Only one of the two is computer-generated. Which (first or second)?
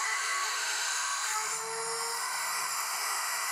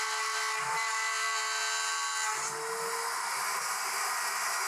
first